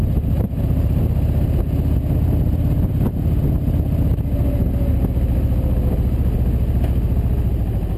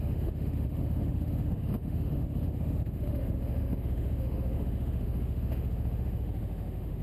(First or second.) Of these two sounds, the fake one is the second